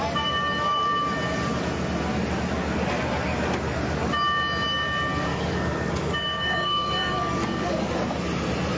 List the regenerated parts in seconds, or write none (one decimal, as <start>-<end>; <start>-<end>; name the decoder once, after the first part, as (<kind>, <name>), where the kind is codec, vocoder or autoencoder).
5.3-7.9 (codec, DAC)